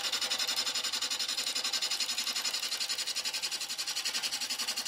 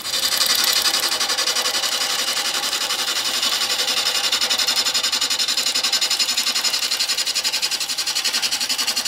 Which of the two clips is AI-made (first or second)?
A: second